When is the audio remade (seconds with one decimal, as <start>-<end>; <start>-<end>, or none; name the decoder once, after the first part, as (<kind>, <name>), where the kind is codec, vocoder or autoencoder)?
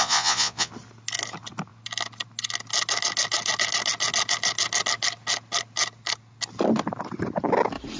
0.0-0.7 (vocoder, Vocos)